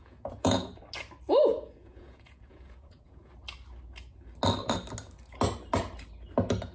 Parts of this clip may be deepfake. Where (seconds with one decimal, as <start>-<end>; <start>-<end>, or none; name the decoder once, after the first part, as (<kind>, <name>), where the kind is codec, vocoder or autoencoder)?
0.0-0.8 (vocoder, Vocos); 1.5-3.3